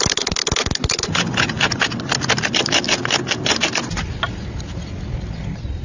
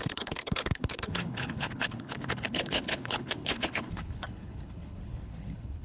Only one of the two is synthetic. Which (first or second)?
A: second